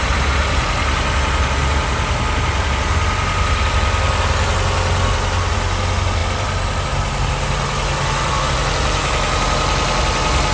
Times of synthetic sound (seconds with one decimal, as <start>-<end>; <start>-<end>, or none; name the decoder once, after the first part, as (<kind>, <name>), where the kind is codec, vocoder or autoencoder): none